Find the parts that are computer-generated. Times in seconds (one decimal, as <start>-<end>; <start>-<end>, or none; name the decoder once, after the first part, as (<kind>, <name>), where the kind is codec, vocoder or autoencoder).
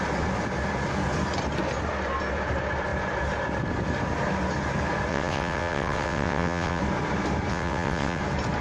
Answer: 5.1-6.8 (vocoder, WaveNeXt); 7.5-8.2